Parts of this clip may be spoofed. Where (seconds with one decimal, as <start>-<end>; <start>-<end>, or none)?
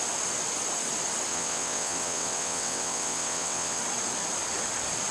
1.3-3.8